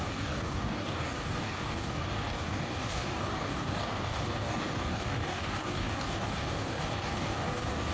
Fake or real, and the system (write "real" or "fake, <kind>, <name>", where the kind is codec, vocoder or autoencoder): fake, codec, DAC